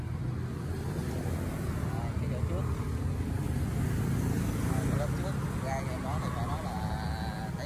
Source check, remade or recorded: recorded